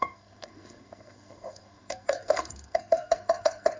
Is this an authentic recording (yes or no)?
no